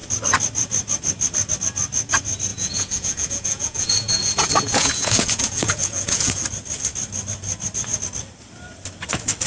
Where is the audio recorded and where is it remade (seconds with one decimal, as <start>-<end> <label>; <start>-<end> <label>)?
0.0-2.5 recorded; 2.5-6.4 remade; 6.4-9.5 recorded